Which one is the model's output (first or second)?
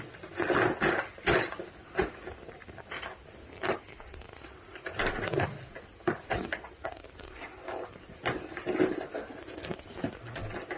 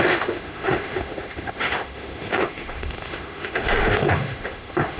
second